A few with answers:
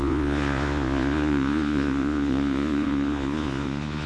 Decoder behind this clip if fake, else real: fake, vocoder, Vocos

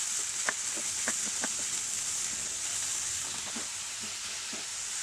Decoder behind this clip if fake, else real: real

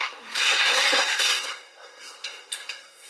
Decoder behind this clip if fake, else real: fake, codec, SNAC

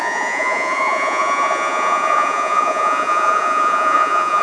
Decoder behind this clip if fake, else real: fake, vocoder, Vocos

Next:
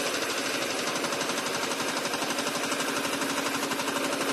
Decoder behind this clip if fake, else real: real